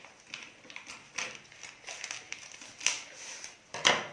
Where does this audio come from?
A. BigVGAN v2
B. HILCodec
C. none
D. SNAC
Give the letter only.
C